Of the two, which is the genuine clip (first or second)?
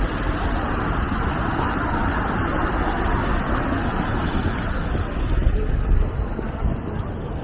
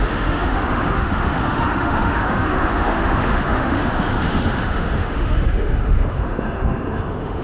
first